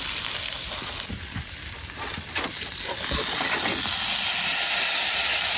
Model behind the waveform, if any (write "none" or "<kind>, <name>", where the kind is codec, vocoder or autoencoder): none